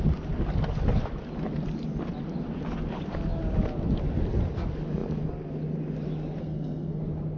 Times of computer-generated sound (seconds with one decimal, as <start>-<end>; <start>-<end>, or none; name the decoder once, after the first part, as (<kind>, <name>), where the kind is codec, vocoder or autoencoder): 6.4-7.0 (codec, SNAC)